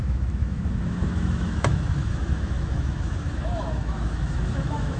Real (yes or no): no